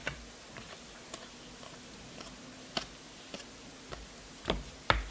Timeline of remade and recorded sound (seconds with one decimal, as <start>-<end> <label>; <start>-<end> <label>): 0.0-5.1 recorded